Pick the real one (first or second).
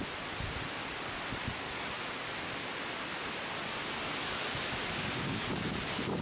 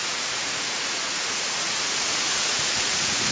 first